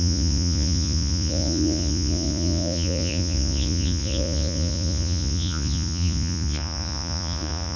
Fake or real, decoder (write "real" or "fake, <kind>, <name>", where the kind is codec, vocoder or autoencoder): fake, vocoder, Vocos